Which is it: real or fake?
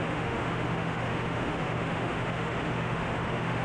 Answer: fake